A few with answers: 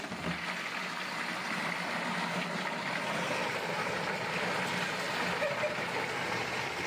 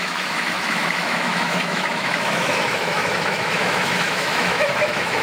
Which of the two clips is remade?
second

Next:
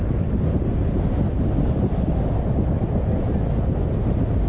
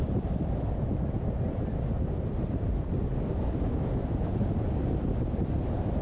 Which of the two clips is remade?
second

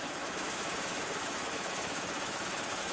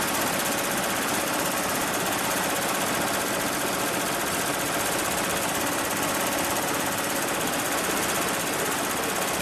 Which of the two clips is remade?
first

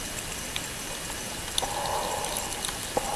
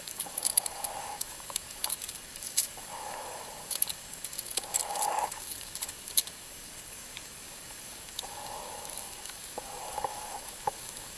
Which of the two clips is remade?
second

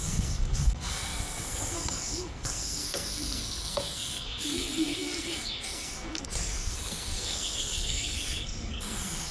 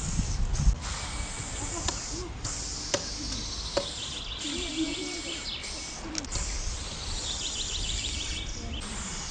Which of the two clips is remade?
first